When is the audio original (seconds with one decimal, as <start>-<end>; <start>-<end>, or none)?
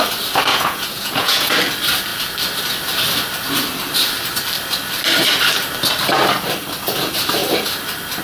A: 0.0-0.5; 1.5-8.2